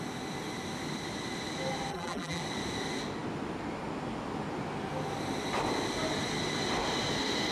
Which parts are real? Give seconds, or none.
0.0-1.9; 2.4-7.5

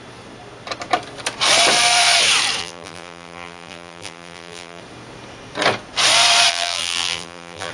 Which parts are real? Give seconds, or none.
0.0-2.6; 4.8-6.5

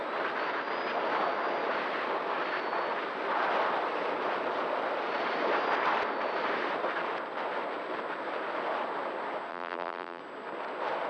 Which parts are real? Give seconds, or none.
0.0-9.5; 10.2-11.1

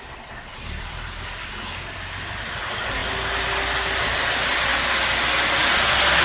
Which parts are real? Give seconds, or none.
0.0-0.5; 1.5-6.2